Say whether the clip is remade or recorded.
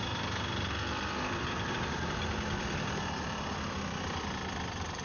remade